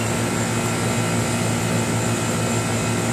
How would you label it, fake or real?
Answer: real